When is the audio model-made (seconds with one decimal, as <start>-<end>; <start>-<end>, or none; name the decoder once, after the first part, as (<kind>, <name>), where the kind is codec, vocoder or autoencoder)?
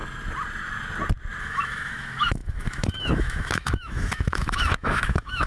1.4-5.5 (autoencoder, DAC-VAE)